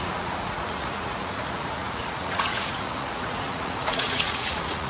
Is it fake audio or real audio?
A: fake